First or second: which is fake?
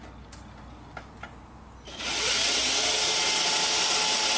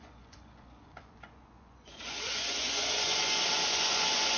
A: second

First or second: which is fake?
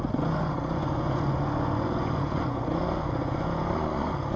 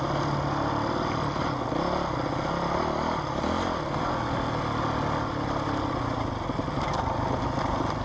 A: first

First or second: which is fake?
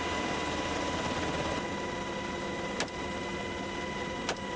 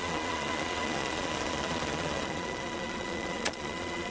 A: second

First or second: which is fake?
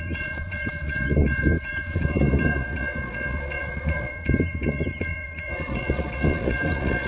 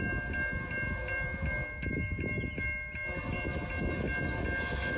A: first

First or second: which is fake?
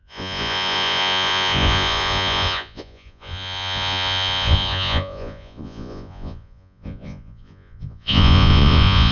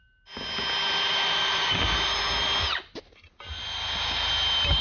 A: first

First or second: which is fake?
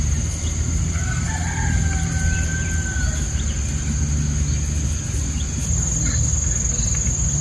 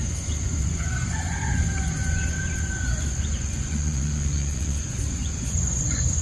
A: second